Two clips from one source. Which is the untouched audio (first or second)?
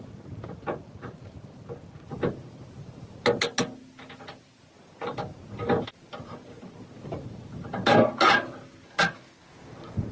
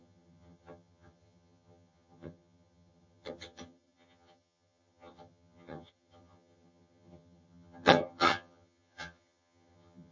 first